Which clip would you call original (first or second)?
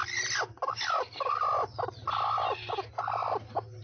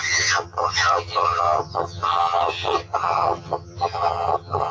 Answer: first